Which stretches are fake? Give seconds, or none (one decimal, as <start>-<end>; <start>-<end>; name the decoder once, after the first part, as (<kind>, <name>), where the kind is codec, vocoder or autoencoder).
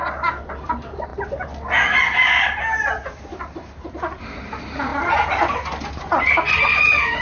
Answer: none